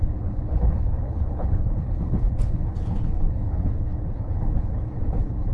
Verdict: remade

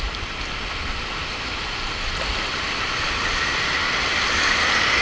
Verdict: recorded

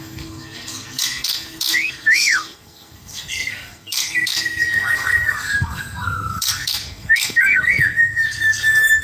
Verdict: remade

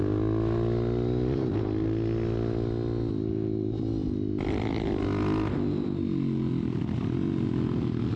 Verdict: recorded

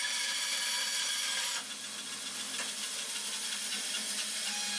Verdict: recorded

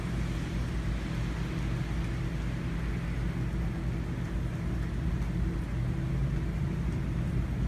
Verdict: recorded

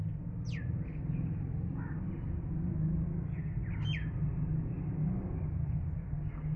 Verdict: recorded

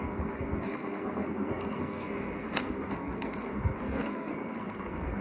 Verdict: remade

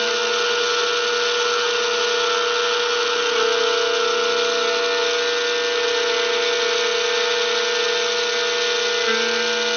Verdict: recorded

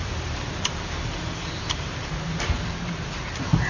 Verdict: remade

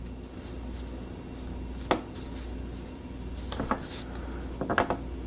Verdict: recorded